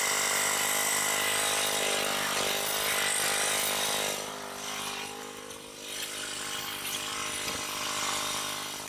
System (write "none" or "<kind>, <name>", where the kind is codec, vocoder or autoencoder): none